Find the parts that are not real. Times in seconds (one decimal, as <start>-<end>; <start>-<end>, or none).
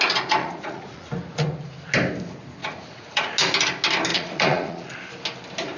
0.4-1.1; 2.6-3.3; 4.1-4.9